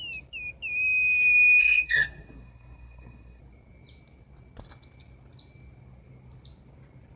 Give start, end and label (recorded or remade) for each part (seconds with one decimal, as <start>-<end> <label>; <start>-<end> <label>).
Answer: 0.0-1.6 recorded; 1.6-3.4 remade; 3.4-7.2 recorded